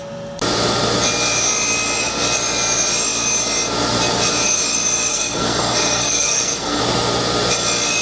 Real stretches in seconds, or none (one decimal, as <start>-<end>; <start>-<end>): 0.0-5.1; 6.8-8.0